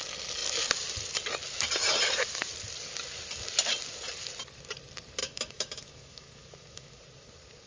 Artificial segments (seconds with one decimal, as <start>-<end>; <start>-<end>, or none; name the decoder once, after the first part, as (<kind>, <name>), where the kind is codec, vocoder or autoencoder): 5.2-7.0 (autoencoder, DAC-VAE)